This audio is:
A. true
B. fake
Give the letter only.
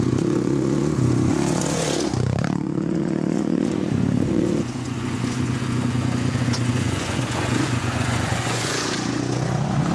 B